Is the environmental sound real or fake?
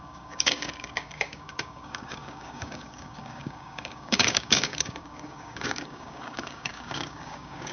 fake